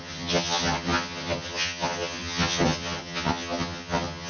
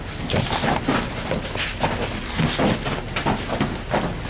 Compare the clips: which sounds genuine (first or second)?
second